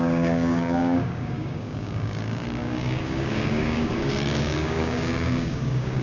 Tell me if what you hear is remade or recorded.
remade